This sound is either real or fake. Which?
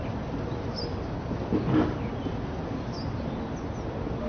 real